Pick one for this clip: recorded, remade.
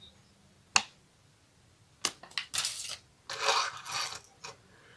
recorded